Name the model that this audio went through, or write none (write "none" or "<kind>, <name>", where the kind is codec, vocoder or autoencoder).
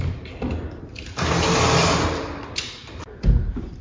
none